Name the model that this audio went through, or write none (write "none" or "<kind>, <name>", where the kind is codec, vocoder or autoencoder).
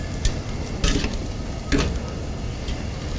none